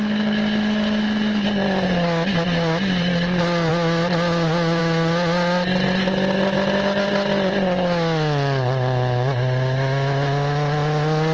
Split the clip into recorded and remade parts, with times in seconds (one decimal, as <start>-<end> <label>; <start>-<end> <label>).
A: 0.0-11.3 recorded